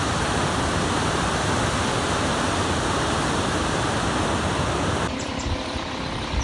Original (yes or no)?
no